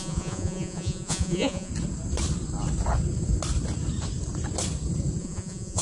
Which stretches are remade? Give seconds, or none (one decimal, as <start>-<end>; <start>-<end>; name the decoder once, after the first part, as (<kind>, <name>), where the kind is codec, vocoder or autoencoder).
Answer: 0.0-1.7 (vocoder, Vocos); 5.2-5.8